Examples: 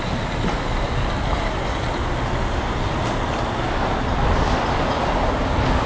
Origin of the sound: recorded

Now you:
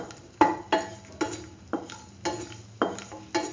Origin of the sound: recorded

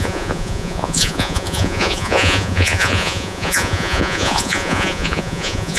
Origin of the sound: remade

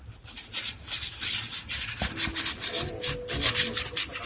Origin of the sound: recorded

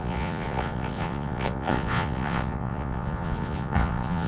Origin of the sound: remade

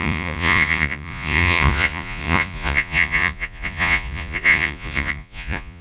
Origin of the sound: remade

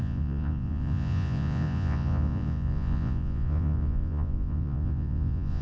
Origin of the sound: remade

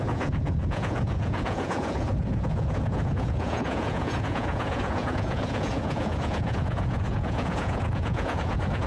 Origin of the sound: remade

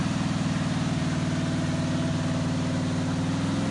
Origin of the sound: recorded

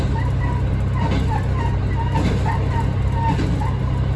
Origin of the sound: recorded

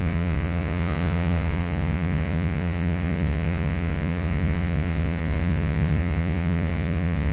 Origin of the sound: remade